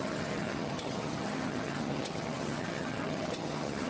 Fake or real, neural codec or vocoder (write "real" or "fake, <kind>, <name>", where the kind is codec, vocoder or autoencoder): fake, vocoder, HiFi-GAN